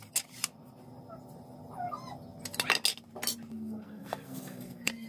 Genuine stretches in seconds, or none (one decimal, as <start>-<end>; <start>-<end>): 0.0-3.5